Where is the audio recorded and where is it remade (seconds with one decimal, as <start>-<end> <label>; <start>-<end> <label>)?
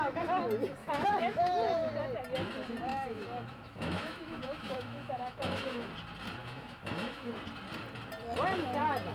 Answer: 0.0-0.8 recorded; 0.8-1.9 remade; 1.9-2.9 recorded; 2.9-5.9 remade; 5.9-6.4 recorded; 6.4-7.3 remade; 7.3-9.1 recorded